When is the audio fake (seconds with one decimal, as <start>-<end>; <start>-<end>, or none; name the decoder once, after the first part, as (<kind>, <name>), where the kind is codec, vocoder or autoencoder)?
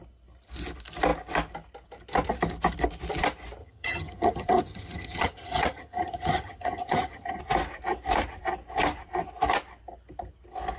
3.6-7.4 (vocoder, HiFi-GAN)